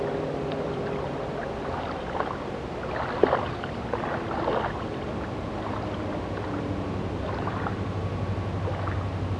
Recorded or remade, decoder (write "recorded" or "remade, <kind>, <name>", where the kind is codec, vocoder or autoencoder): recorded